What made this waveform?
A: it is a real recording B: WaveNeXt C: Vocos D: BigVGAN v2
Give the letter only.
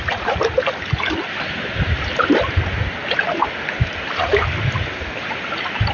A